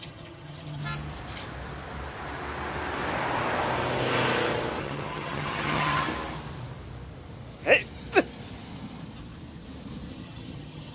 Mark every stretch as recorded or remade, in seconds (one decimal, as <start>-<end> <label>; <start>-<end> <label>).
0.0-0.8 remade; 0.8-4.8 recorded; 4.8-6.1 remade; 6.1-10.1 recorded; 10.1-10.9 remade